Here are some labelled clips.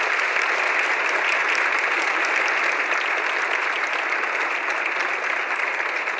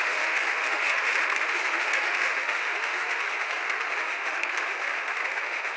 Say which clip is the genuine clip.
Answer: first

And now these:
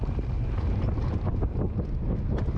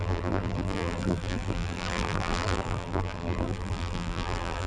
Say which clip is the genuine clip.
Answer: first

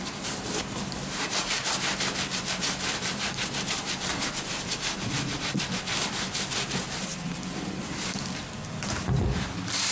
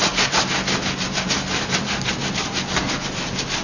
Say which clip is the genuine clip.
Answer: second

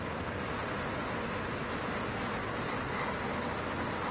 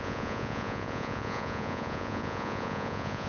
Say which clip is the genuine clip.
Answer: first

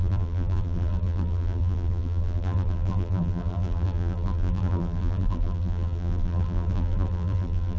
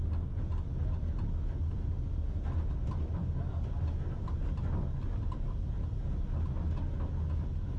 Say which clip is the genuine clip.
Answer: second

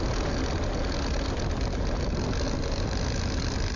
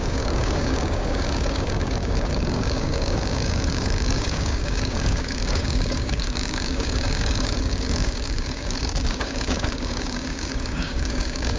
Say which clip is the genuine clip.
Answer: first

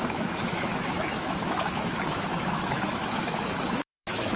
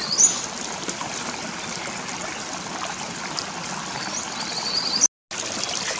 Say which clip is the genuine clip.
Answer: second